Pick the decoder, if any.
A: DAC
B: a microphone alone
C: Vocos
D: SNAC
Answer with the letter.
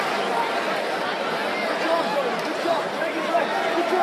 B